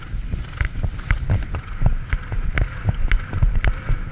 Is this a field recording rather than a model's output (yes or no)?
yes